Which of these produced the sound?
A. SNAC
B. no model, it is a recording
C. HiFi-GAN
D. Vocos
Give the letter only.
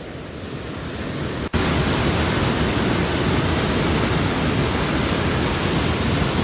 B